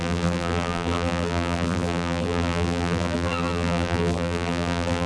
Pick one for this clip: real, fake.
fake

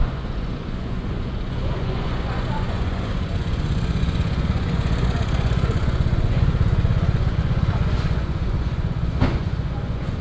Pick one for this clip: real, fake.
fake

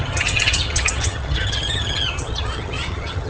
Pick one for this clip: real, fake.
fake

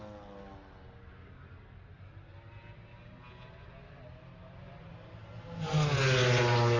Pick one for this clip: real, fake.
real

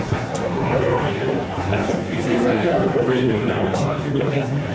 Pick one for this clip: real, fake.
fake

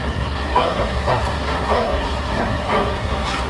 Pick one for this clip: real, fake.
fake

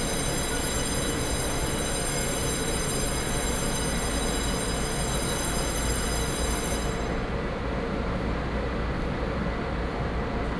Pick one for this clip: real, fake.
real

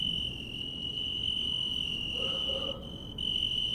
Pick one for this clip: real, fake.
real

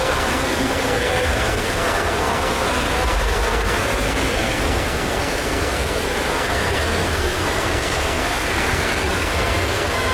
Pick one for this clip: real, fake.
fake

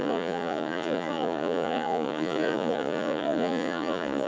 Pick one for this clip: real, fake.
fake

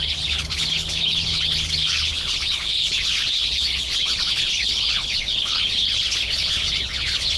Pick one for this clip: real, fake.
fake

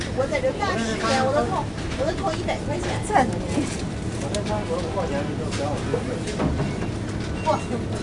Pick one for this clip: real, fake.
real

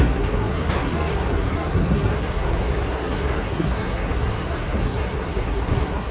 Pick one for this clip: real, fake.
fake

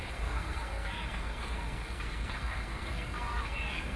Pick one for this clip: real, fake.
fake